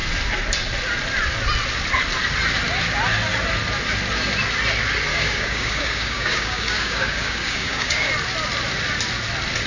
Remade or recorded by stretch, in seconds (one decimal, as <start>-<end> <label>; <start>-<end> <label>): 0.0-5.1 recorded; 5.1-8.1 remade; 8.1-9.7 recorded